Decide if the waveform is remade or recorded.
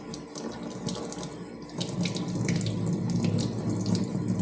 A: recorded